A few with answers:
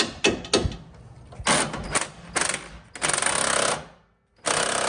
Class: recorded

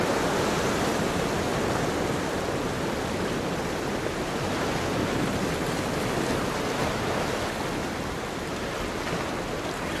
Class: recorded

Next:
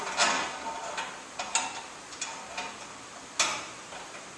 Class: recorded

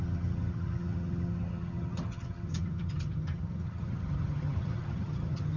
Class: remade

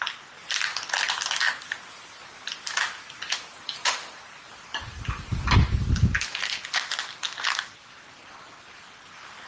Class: recorded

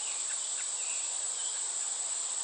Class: remade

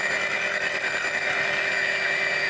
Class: recorded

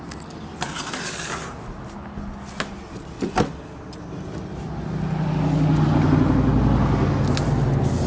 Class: recorded